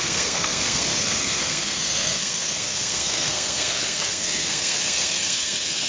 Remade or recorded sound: remade